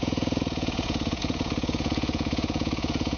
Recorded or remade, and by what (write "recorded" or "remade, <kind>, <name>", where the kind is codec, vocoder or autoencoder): remade, vocoder, Vocos